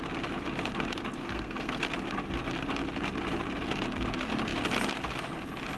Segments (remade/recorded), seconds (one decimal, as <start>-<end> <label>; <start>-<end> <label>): 0.0-1.2 recorded; 1.2-1.8 remade; 1.8-5.8 recorded